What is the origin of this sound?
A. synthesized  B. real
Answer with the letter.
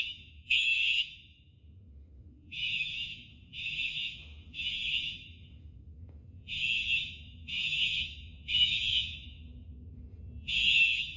A